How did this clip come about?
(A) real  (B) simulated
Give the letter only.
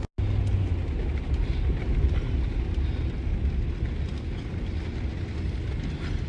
A